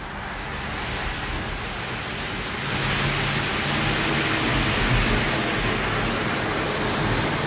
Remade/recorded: recorded